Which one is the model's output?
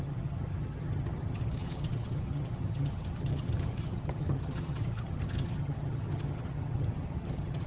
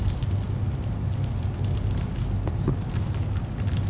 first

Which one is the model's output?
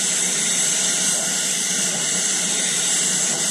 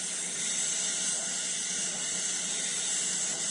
first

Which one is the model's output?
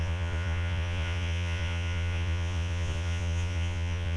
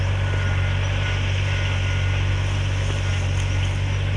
first